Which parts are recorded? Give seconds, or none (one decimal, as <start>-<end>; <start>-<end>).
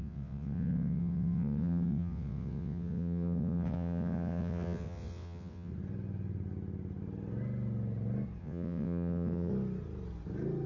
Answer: 5.7-8.4; 9.5-10.7